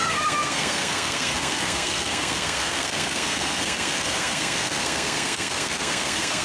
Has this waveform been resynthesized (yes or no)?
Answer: yes